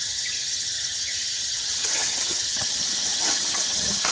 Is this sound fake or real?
fake